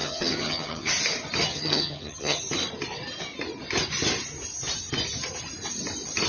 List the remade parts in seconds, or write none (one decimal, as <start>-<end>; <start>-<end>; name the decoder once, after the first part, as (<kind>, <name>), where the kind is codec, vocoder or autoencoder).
0.0-0.9 (vocoder, HiFi-GAN); 1.5-2.4